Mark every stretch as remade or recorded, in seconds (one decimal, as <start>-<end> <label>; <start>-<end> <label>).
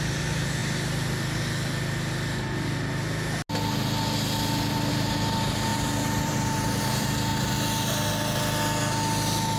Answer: 0.0-0.6 remade; 0.6-4.9 recorded; 4.9-7.3 remade; 7.3-9.6 recorded